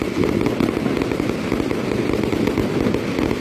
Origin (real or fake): real